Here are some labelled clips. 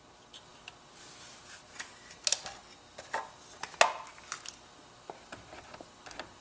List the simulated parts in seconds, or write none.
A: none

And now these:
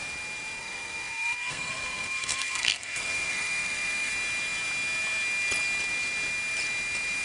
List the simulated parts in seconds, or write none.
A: 0.6-4.1 (codec, SNAC)

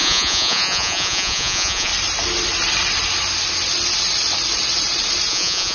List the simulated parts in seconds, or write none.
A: 0.0-1.9 (vocoder, Vocos); 5.3-5.7